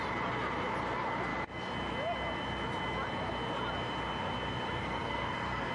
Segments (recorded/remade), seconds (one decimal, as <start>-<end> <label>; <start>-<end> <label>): 0.0-4.8 recorded; 4.8-5.7 remade